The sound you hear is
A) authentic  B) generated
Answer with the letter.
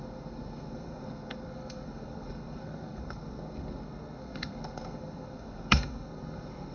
B